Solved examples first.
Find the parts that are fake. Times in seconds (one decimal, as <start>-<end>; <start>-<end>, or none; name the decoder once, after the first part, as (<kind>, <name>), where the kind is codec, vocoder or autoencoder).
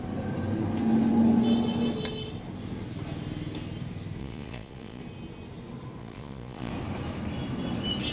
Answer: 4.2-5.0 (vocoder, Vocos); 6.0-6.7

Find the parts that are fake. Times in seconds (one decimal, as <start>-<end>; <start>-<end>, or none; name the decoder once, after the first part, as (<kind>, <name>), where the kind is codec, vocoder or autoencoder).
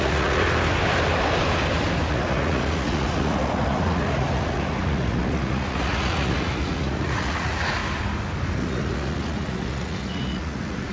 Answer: 0.0-0.4 (vocoder, Vocos); 2.1-7.8; 8.6-10.9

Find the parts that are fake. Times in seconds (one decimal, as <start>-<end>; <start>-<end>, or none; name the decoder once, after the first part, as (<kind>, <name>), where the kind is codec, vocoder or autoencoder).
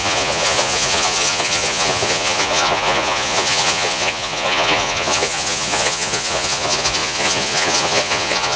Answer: 0.0-8.6 (vocoder, Vocos)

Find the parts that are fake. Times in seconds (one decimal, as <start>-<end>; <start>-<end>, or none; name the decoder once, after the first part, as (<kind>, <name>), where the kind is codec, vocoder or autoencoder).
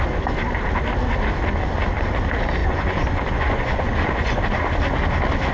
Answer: 2.6-4.4 (vocoder, Vocos)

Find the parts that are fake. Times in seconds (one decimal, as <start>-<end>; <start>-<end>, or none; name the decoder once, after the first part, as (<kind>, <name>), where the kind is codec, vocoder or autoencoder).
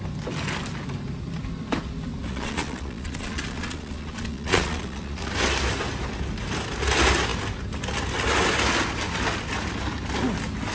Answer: 2.3-5.3 (vocoder, Vocos)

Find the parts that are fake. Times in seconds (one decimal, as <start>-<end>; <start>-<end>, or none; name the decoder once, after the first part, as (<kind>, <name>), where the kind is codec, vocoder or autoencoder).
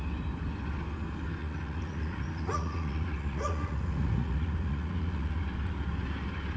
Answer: 1.4-5.4 (vocoder, Vocos)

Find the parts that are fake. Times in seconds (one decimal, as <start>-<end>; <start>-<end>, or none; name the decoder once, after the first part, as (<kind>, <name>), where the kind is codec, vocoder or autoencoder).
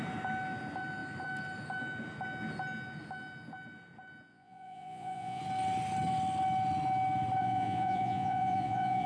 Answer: 4.3-5.4 (vocoder, Vocos); 7.4-9.1